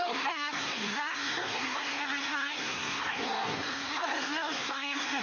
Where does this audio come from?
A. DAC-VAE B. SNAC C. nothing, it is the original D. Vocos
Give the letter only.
B